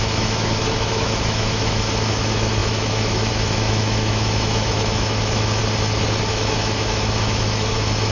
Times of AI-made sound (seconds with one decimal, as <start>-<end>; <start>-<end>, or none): 0.0-5.6; 6.3-8.1